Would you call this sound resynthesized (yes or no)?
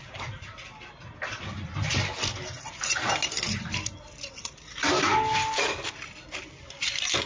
no